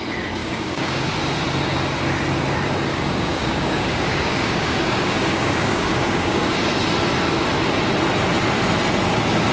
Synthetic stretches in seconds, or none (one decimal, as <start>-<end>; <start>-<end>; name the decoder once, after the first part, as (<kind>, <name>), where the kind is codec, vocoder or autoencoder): 0.4-1.1 (codec, DAC); 2.9-6.5